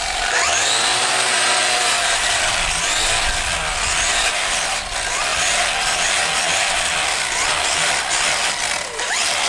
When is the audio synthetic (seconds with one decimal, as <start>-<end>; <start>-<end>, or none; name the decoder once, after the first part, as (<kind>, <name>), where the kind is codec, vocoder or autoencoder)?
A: 0.9-2.8 (vocoder, BigVGAN v2)